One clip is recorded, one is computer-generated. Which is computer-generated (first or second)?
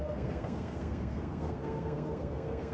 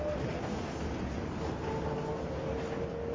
first